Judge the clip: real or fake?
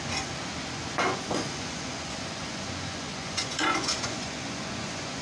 fake